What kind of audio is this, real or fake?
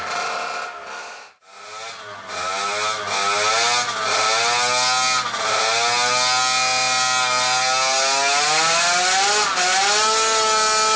real